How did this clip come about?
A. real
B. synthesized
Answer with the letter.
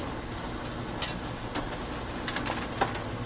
A